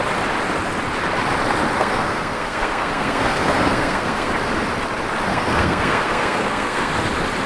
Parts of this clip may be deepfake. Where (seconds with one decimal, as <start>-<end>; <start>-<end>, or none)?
1.8-4.5; 5.3-6.9